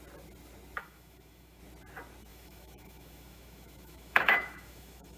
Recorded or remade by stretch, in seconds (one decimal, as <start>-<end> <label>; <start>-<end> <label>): 0.0-0.8 recorded; 0.8-1.6 remade; 1.6-2.3 recorded; 2.3-5.2 remade